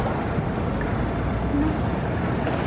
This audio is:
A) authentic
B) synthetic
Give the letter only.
A